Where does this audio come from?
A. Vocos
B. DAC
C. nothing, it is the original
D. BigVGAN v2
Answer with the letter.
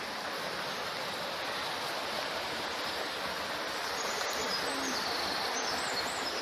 C